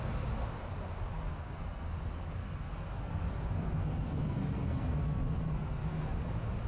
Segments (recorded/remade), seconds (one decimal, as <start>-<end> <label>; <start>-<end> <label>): 0.0-1.2 recorded; 1.2-1.9 remade; 1.9-2.4 recorded; 2.4-6.2 remade; 6.2-6.7 recorded